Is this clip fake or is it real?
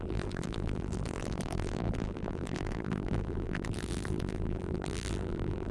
fake